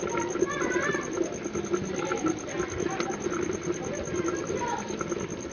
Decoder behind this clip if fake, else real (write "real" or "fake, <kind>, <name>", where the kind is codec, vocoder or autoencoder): fake, vocoder, BigVGAN v2